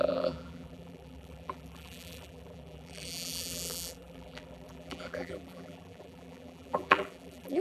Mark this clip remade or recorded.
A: remade